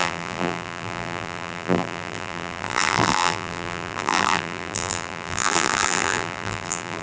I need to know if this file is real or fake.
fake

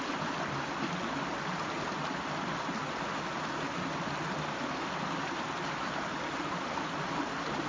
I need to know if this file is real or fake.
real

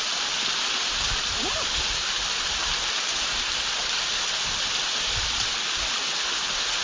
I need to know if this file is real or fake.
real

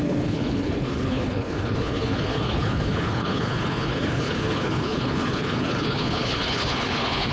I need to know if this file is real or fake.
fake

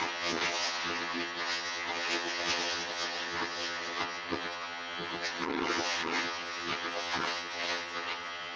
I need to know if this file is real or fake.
fake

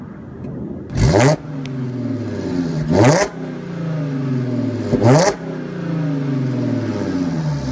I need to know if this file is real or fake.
real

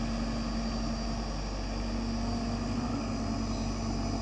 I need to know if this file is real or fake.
real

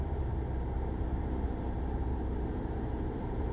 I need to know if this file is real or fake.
fake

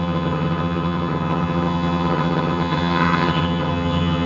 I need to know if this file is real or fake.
fake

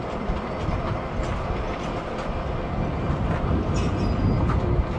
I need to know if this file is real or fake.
real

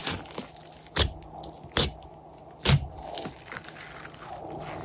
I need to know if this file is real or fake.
real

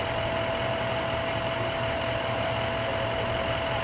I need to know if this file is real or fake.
real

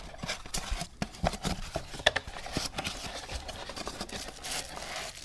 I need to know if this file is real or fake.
real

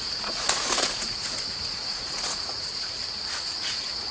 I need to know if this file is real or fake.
fake